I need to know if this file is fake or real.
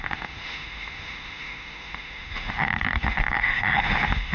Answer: fake